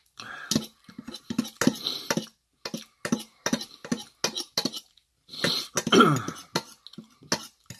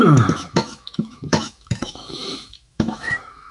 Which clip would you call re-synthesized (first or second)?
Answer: second